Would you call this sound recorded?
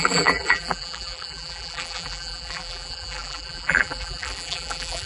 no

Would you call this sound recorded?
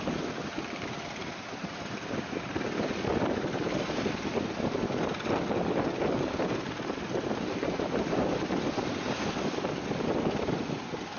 no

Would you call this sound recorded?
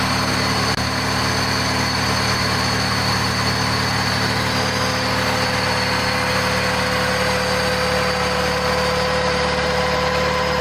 yes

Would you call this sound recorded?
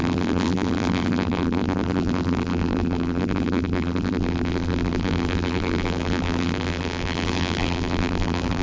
no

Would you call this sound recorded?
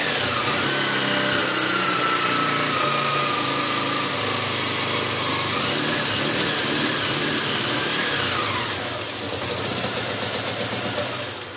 yes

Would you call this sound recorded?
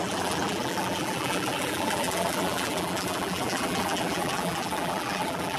no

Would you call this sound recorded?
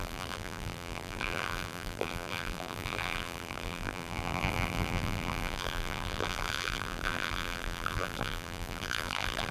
no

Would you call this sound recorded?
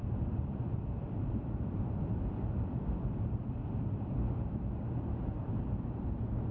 no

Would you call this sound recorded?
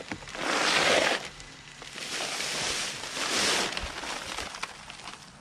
yes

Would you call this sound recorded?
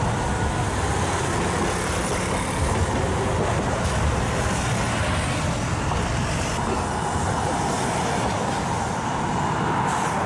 yes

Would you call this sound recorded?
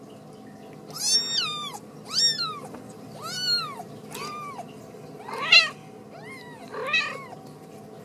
yes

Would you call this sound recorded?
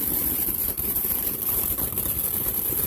no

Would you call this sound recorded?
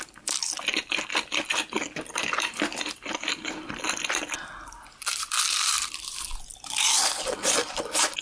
no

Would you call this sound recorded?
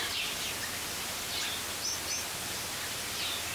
yes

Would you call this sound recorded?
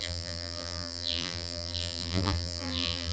no